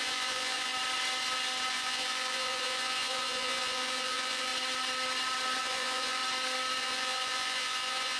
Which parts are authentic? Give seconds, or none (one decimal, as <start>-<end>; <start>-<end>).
0.7-1.7; 4.5-5.6; 6.2-6.8